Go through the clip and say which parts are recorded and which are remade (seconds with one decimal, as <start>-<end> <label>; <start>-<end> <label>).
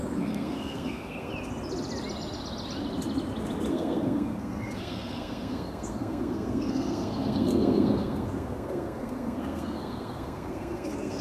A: 0.0-1.3 remade; 1.3-3.7 recorded; 3.7-11.2 remade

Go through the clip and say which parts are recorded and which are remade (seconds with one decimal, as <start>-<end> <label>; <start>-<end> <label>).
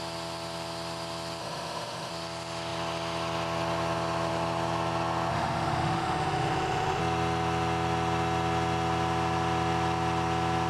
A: 0.0-1.4 recorded; 1.4-2.1 remade; 2.1-5.3 recorded; 5.3-7.0 remade; 7.0-10.7 recorded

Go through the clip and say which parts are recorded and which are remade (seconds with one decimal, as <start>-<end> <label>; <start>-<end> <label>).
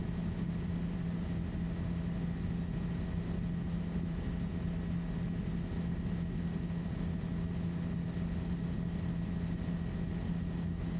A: 0.0-11.0 recorded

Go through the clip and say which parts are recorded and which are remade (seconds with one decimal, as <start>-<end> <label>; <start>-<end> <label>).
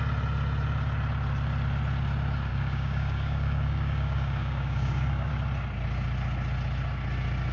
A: 0.0-2.5 recorded; 2.5-5.3 remade; 5.3-7.5 recorded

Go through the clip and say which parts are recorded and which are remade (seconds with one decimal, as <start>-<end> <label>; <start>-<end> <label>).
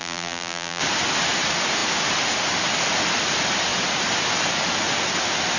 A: 0.0-0.8 remade; 0.8-5.6 recorded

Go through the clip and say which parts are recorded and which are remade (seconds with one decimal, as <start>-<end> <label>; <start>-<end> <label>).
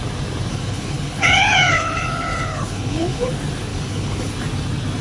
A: 0.0-0.5 recorded; 0.5-3.3 remade; 3.3-3.7 recorded; 3.7-4.3 remade; 4.3-5.0 recorded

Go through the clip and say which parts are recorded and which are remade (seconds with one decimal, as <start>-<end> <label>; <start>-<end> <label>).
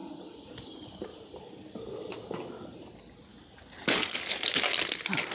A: 0.0-0.5 remade; 0.5-5.3 recorded